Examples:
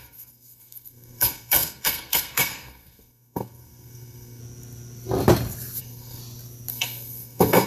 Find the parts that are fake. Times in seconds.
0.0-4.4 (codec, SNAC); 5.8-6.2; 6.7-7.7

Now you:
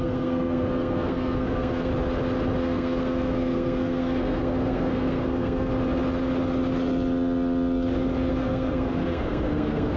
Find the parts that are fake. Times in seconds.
0.0-1.9 (codec, SNAC); 2.6-5.7; 8.3-10.0

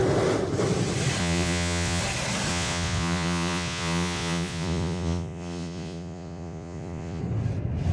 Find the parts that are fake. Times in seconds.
1.2-2.0 (vocoder, Vocos); 2.5-7.2

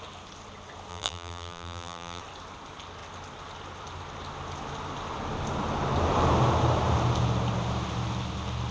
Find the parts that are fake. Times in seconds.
0.9-2.2 (vocoder, BigVGAN v2)

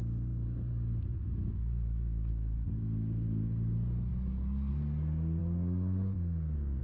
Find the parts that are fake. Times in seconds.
1.1-2.3 (autoencoder, DAC-VAE)